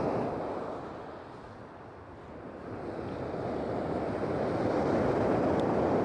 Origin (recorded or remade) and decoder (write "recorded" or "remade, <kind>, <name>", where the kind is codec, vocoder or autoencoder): recorded